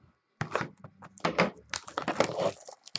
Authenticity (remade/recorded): recorded